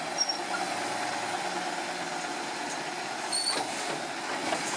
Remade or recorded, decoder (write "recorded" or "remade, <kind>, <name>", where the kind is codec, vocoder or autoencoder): recorded